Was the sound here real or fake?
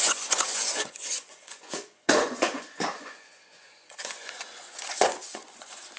fake